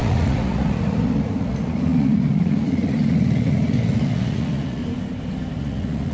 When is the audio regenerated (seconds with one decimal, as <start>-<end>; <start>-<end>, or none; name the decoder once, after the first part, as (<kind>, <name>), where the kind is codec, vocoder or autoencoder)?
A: 0.0-4.8 (vocoder, Vocos); 5.6-6.1